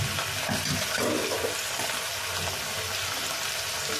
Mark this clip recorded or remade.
recorded